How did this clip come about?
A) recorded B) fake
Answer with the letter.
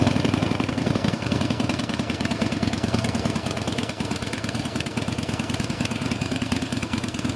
B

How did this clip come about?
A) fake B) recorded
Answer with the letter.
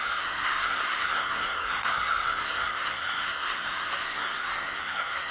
A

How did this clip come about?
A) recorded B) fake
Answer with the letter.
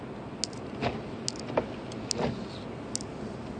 A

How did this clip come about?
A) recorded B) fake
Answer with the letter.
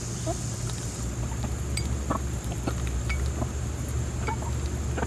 A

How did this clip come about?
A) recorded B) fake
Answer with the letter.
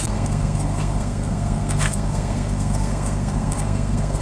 B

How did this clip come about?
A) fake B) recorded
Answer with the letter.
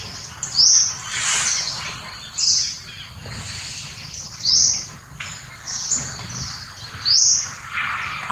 B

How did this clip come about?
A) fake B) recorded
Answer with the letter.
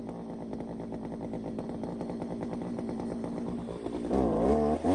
B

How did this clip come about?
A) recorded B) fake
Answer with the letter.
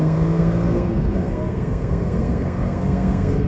B